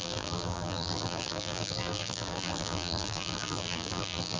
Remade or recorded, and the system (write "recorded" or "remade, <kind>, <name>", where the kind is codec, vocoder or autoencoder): remade, vocoder, BigVGAN v2